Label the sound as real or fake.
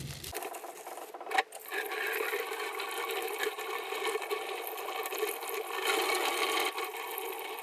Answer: real